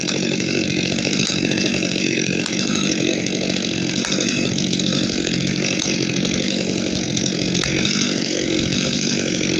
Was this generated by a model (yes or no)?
yes